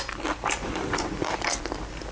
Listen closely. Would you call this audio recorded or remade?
recorded